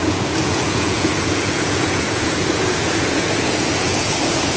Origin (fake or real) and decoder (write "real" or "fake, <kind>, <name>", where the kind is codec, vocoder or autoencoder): fake, vocoder, Vocos